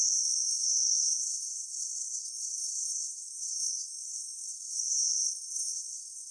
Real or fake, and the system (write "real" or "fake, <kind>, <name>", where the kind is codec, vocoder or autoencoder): fake, codec, SNAC